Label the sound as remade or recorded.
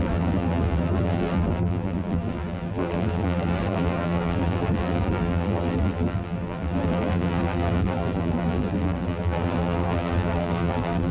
remade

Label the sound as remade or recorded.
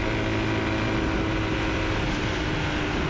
recorded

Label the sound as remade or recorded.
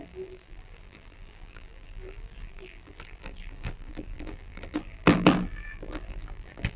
remade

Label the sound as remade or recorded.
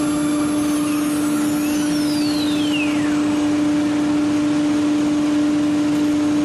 recorded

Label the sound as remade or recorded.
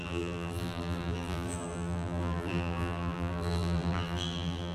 remade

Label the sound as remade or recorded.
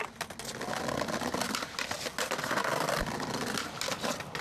recorded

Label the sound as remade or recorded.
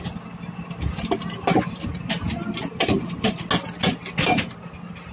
recorded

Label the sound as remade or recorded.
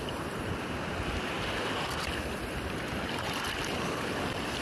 recorded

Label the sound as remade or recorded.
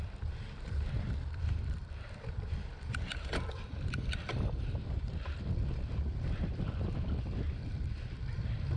remade